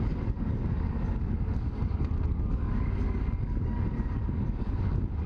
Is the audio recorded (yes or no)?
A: no